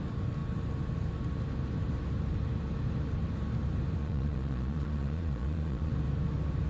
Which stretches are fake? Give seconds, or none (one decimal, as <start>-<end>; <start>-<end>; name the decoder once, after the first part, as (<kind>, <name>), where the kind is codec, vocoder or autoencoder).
4.0-5.9 (vocoder, Vocos)